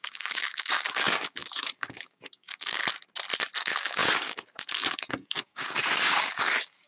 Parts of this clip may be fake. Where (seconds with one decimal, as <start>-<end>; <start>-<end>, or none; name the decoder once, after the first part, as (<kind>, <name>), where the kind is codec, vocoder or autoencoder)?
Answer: 0.0-2.8 (codec, DAC); 3.6-6.9